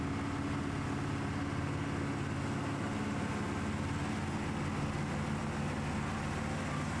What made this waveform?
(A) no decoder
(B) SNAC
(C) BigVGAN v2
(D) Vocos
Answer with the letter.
A